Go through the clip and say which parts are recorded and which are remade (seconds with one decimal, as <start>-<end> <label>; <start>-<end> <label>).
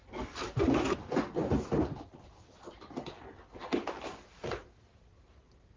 0.0-5.8 recorded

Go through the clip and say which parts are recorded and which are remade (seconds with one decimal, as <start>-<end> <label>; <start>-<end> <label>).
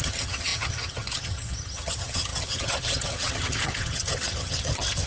0.0-5.1 remade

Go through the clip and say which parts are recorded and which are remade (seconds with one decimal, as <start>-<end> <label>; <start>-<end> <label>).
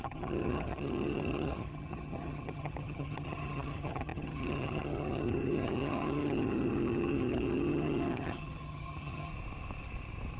0.0-9.3 remade; 9.3-10.4 recorded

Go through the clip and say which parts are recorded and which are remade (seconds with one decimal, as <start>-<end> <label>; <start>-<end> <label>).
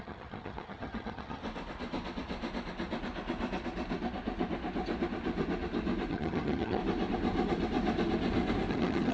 0.0-1.4 remade; 1.4-6.1 recorded; 6.1-6.8 remade; 6.8-8.7 recorded; 8.7-9.1 remade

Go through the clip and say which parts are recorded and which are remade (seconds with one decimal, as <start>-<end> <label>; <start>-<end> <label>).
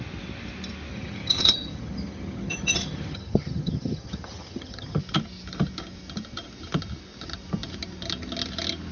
0.0-0.9 recorded; 0.9-5.0 remade; 5.0-8.9 recorded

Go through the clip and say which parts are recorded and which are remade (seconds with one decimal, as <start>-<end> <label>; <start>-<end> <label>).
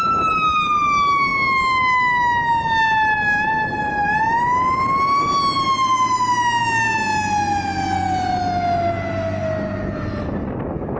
0.0-11.0 recorded